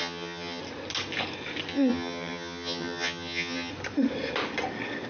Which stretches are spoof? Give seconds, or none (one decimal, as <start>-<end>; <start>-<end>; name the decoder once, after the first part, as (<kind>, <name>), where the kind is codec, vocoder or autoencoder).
0.0-0.6 (vocoder, HiFi-GAN); 1.7-3.7